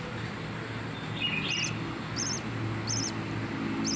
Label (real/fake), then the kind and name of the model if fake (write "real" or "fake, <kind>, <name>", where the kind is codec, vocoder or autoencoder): real